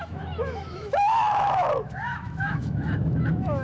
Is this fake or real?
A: fake